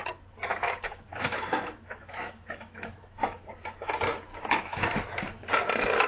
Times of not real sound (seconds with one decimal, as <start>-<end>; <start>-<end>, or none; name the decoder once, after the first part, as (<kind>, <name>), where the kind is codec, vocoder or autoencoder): 0.5-3.5 (autoencoder, DAC-VAE); 4.3-5.5